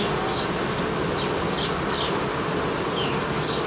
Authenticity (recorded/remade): recorded